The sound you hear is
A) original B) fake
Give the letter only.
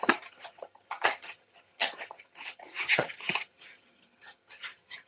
B